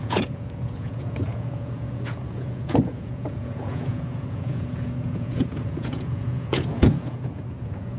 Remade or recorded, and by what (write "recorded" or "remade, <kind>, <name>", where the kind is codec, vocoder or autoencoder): remade, vocoder, Vocos